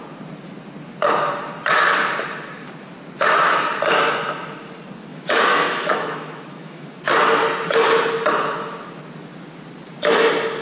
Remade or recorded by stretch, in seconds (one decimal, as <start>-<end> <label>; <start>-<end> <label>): 0.0-5.1 recorded; 5.1-7.0 remade; 7.0-10.6 recorded